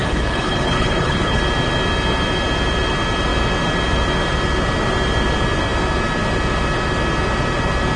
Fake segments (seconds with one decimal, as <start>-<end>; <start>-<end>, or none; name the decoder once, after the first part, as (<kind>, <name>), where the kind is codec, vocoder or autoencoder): 0.0-1.4 (codec, HILCodec)